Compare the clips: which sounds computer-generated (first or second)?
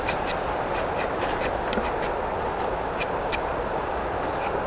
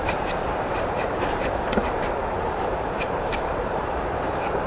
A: second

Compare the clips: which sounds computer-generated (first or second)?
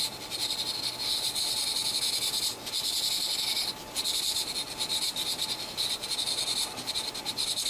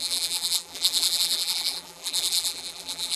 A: second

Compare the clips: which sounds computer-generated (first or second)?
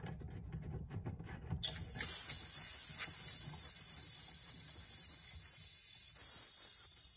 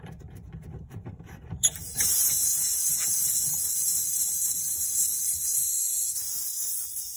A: second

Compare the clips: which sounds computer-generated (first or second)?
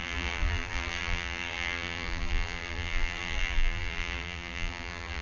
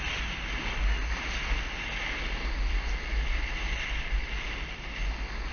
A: first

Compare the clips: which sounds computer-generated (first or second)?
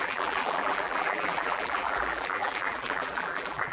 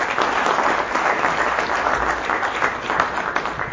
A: first